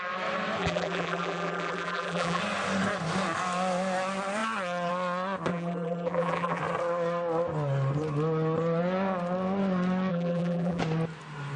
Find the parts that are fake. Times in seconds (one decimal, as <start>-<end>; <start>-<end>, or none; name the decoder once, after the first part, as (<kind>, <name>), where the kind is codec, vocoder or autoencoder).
0.6-2.4 (vocoder, BigVGAN v2); 5.5-6.6; 10.1-10.8